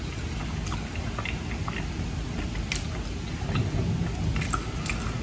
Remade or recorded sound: recorded